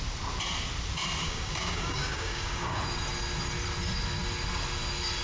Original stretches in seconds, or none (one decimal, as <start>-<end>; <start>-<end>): 0.0-1.2; 2.8-5.2